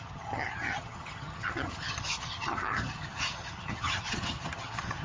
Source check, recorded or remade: remade